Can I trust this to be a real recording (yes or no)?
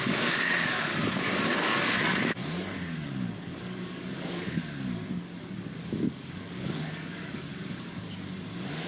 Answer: no